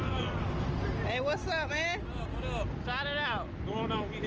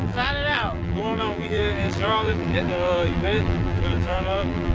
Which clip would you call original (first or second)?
first